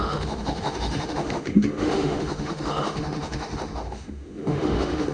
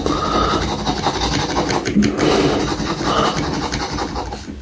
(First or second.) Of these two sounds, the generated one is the first